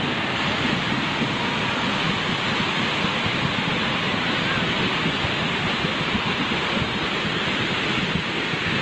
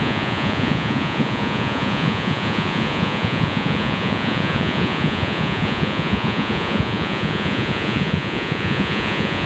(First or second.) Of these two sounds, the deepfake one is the second